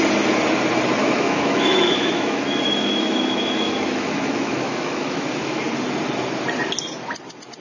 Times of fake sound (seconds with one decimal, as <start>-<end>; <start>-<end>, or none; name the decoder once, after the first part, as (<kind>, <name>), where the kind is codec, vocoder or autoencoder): 1.0-5.6 (autoencoder, DAC-VAE)